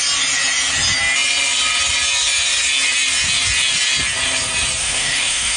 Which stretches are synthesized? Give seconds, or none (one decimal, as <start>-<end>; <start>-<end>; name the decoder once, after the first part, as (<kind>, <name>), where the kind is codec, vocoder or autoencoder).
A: 4.8-5.6 (autoencoder, DAC-VAE)

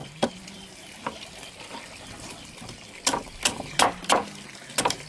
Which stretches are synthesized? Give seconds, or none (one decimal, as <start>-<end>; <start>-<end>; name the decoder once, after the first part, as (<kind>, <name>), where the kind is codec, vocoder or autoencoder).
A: 0.0-1.4 (vocoder, BigVGAN v2)

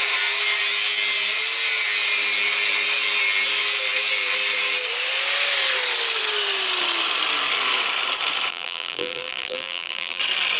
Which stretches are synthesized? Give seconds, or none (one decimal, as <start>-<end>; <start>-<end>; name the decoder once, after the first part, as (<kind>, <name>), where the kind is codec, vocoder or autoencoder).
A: 8.5-10.2 (vocoder, BigVGAN v2)

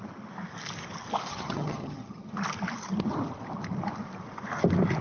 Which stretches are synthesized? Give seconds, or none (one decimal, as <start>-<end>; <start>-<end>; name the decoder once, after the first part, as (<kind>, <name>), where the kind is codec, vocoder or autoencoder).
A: 1.3-2.3 (vocoder, HiFi-GAN)

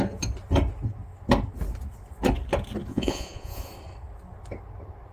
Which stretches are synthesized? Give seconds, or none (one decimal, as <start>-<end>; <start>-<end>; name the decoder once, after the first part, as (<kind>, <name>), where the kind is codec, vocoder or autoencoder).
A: 2.9-3.7 (vocoder, Vocos)

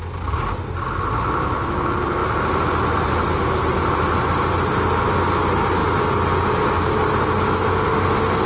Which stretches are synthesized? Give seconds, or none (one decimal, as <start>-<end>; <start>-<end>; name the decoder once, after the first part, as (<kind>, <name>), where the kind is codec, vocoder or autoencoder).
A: none

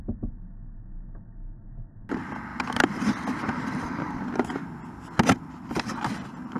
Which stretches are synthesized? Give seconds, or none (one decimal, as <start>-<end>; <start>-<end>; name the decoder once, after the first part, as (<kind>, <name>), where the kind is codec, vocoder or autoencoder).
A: 2.5-4.7 (vocoder, BigVGAN v2)